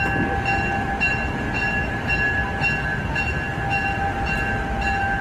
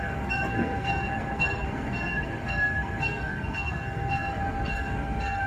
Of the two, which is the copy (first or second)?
second